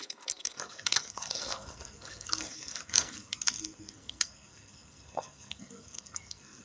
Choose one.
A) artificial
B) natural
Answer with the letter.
A